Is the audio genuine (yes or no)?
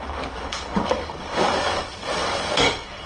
no